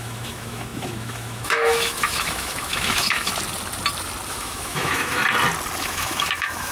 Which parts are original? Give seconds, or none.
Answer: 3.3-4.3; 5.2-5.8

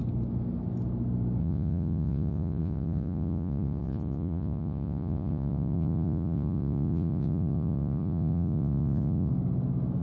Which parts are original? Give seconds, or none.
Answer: 0.0-1.4; 9.3-10.0

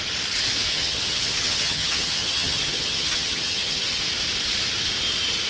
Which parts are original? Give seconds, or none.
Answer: 0.0-0.7; 4.0-5.5

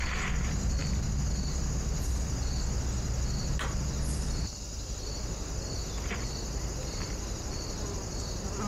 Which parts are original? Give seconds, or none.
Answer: 0.0-8.7

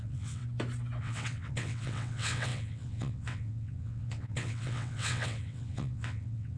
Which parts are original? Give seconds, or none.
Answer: 0.4-1.0

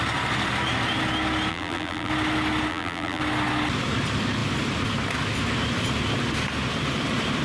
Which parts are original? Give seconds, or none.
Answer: 0.0-1.5; 2.1-2.7; 3.2-7.4